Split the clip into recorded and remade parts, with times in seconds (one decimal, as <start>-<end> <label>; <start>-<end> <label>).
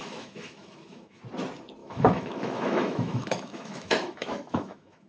0.0-1.2 remade; 1.2-1.8 recorded; 1.8-5.1 remade